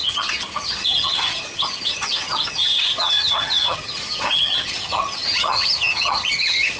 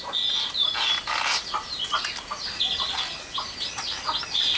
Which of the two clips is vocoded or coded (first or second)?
first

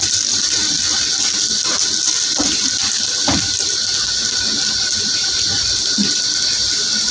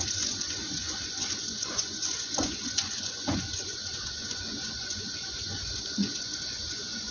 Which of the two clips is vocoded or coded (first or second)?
second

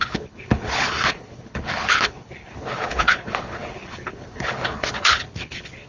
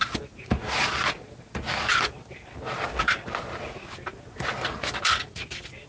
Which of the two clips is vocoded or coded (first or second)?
first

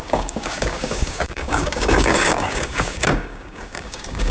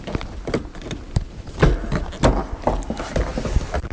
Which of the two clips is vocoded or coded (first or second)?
first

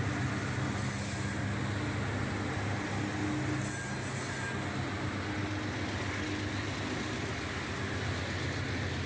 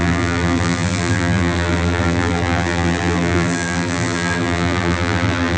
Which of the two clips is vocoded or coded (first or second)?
second